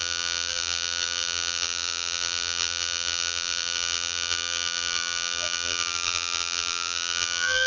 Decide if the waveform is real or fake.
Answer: fake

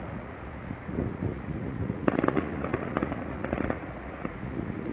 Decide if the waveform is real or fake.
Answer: fake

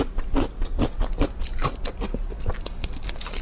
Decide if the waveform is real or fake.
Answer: real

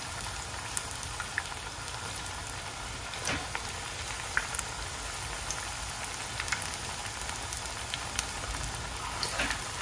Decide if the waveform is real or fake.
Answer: real